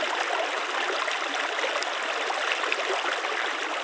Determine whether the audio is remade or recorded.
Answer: recorded